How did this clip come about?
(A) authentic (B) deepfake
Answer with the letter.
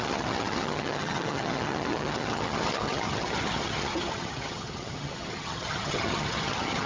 B